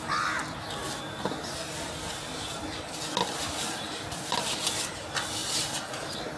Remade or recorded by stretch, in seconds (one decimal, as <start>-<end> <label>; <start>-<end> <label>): 0.0-6.4 recorded